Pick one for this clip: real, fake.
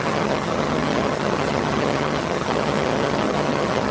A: fake